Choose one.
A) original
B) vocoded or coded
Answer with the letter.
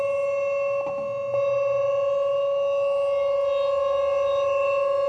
A